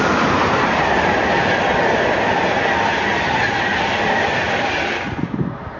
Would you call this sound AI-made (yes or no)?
no